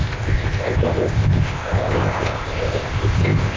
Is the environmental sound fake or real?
fake